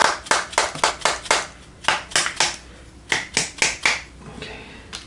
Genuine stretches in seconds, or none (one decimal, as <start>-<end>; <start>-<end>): 0.0-5.1